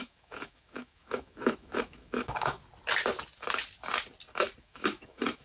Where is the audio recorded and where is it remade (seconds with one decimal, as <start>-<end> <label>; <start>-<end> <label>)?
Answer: 0.0-2.6 remade; 2.6-4.6 recorded; 4.6-5.4 remade